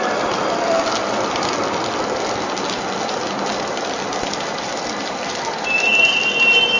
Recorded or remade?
recorded